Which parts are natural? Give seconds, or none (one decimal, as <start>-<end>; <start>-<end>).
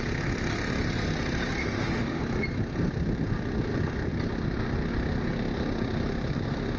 0.0-1.6; 2.2-6.8